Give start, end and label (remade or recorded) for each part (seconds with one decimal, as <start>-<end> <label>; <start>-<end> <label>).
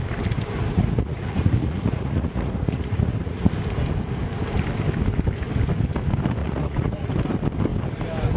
0.0-0.7 recorded; 0.7-3.5 remade; 3.5-6.4 recorded; 6.4-7.1 remade; 7.1-8.4 recorded